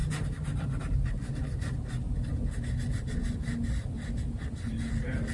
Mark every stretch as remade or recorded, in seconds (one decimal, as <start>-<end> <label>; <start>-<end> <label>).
0.0-5.3 recorded